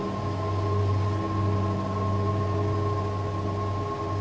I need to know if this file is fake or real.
real